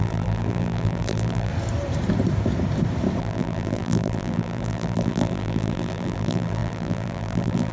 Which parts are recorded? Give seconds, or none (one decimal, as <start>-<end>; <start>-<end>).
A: 1.5-3.2